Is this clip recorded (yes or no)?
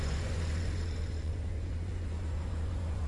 no